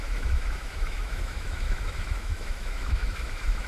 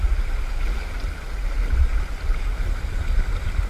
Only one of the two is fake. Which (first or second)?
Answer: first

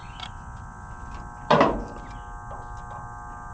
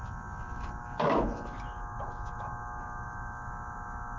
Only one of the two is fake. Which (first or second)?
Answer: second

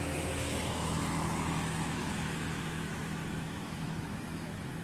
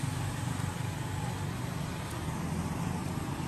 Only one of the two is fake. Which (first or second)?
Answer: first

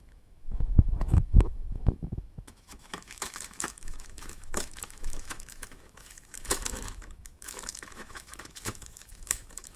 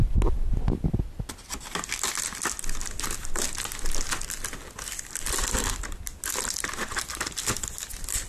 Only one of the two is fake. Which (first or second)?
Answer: first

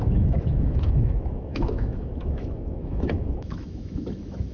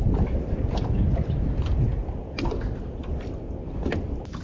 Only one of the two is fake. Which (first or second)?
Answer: first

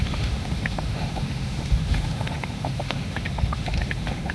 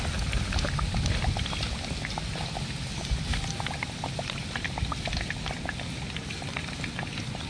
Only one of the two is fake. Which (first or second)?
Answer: first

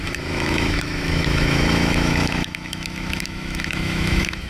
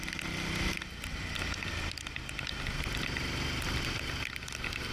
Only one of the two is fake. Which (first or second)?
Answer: first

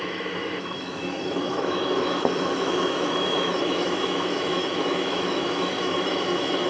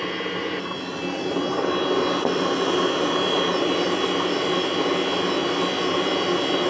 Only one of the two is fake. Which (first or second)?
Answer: first